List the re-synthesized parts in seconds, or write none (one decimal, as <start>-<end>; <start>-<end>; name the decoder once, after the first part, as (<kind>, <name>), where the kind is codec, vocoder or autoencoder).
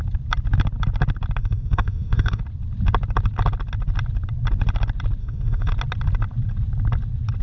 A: 1.4-2.4 (autoencoder, DAC-VAE); 5.2-5.7